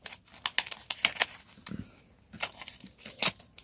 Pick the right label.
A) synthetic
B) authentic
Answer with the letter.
B